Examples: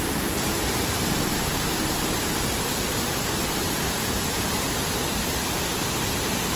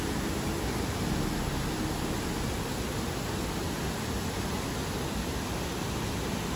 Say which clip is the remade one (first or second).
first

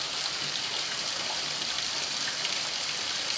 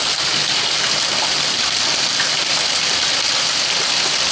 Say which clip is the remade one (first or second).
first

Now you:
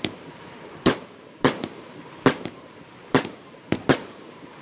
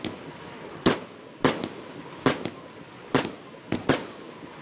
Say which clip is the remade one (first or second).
first